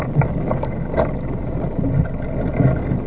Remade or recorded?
recorded